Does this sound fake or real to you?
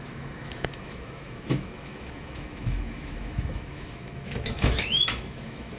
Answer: fake